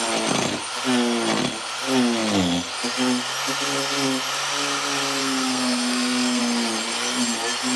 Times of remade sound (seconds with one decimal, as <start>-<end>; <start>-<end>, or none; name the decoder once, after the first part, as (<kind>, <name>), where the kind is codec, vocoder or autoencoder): 5.2-6.4 (codec, SNAC)